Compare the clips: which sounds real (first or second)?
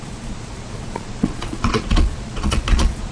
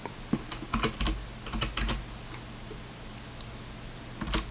second